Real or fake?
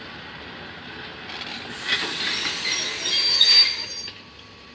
real